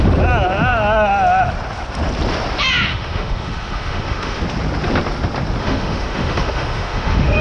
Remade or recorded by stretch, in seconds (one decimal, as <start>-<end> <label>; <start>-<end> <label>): 0.0-2.9 recorded; 2.9-4.4 remade; 4.4-5.6 recorded; 5.6-7.4 remade